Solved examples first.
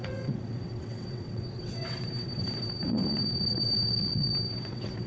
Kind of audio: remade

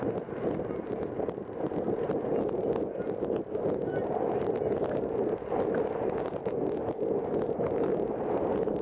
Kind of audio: recorded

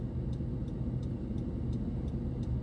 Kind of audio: recorded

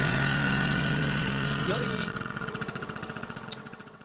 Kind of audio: remade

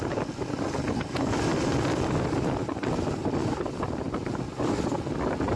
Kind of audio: recorded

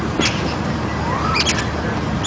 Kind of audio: recorded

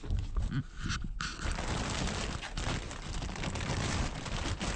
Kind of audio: recorded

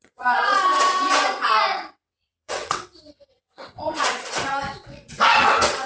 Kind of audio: remade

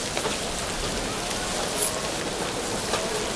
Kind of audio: recorded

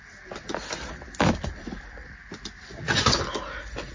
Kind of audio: recorded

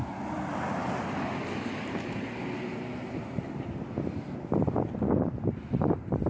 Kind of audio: recorded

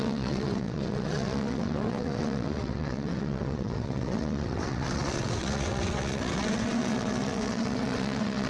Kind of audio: remade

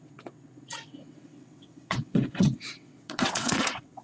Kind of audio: remade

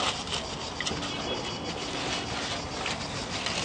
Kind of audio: recorded